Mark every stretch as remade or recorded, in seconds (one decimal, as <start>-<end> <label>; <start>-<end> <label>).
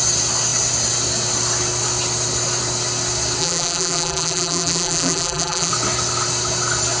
0.0-3.4 recorded; 3.4-5.7 remade; 5.7-7.0 recorded